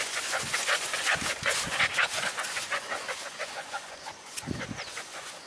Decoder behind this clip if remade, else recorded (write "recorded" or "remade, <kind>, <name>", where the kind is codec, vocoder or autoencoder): remade, vocoder, Vocos